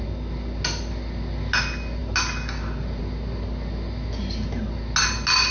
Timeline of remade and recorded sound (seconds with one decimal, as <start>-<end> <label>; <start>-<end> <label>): 0.0-5.5 recorded